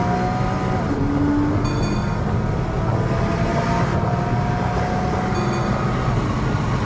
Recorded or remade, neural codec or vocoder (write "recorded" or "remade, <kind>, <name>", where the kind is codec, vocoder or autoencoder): recorded